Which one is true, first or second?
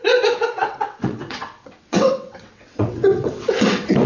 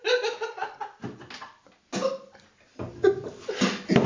second